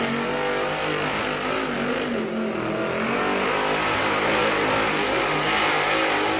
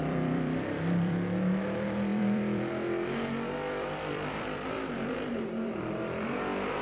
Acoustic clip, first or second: first